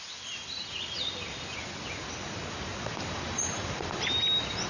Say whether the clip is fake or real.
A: real